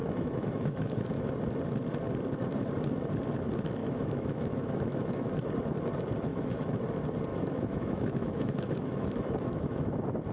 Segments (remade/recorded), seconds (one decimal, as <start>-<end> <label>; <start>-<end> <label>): 0.0-1.3 remade; 1.3-3.8 recorded; 3.8-5.3 remade; 5.3-6.3 recorded; 6.3-6.8 remade; 6.8-7.3 recorded; 7.3-9.9 remade; 9.9-10.3 recorded